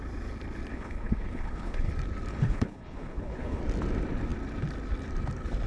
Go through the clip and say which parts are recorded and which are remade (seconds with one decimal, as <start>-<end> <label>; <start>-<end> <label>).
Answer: 0.0-0.7 recorded; 0.7-1.9 remade; 1.9-2.3 recorded; 2.3-3.6 remade; 3.6-5.7 recorded